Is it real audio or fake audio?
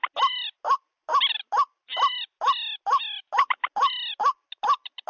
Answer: real